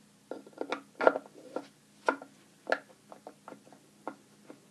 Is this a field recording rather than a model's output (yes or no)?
yes